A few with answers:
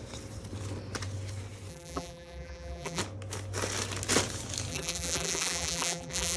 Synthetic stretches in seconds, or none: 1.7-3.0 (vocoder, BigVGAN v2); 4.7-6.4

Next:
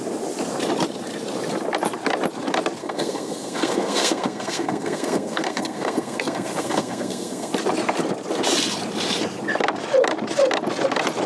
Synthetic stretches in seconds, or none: 2.8-7.5 (codec, SNAC)

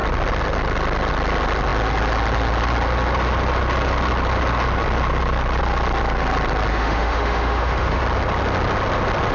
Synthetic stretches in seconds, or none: 6.7-8.0 (autoencoder, DAC-VAE)

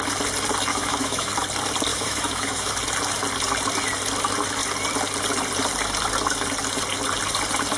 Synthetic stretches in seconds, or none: 0.7-1.3 (autoencoder, DAC-VAE); 1.9-2.7

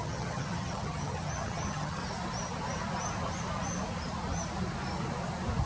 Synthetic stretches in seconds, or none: 0.0-2.0 (vocoder, HiFi-GAN)

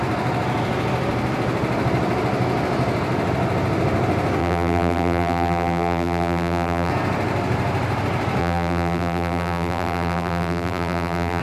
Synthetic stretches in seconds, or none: 4.4-6.9 (vocoder, BigVGAN v2); 8.4-11.4

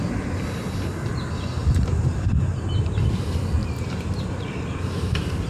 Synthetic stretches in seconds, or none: 1.6-3.2 (vocoder, BigVGAN v2); 3.6-4.6

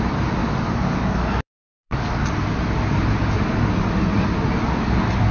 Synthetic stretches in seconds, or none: 0.4-2.2 (codec, DAC)